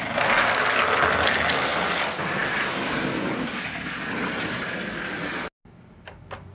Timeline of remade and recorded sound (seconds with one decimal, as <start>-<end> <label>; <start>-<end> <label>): 0.0-6.5 recorded